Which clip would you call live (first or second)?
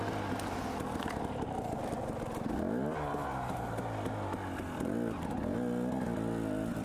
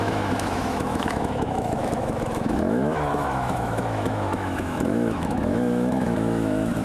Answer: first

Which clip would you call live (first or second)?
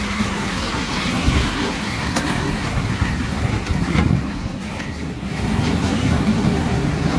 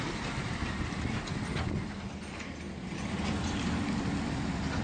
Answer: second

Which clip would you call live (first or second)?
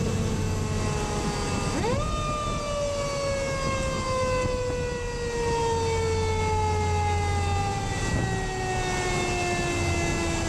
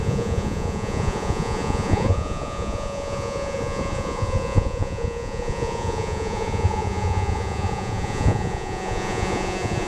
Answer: first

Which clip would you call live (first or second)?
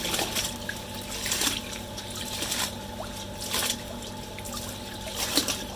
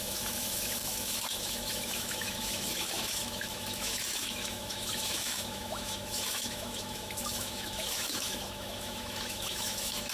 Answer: first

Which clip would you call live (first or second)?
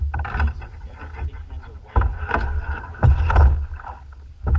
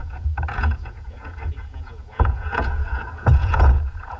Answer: first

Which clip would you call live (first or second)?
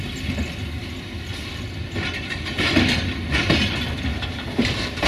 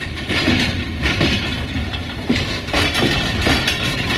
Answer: first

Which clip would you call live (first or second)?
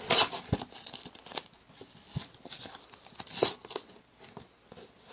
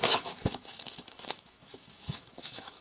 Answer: first